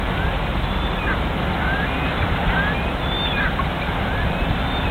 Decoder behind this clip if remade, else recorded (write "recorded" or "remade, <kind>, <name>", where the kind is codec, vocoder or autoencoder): recorded